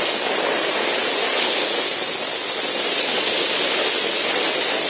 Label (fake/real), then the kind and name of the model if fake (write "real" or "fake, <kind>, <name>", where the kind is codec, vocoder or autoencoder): real